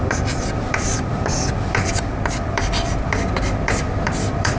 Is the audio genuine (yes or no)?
no